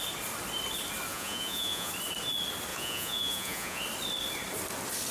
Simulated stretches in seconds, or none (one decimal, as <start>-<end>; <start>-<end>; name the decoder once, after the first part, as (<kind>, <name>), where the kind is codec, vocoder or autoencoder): 1.1-1.9 (vocoder, Vocos); 2.7-3.8

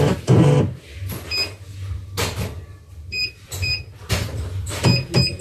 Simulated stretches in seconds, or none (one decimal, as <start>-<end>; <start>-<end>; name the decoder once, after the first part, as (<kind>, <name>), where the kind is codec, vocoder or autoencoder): 3.2-4.8 (vocoder, BigVGAN v2)

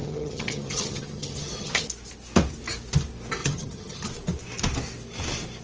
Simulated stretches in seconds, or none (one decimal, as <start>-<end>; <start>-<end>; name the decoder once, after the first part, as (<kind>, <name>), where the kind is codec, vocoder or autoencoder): 0.0-1.7 (vocoder, HiFi-GAN); 3.4-4.1

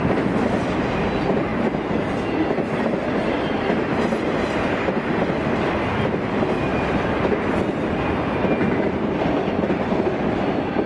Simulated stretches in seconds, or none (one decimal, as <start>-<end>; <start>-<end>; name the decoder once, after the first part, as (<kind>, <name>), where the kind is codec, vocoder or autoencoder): none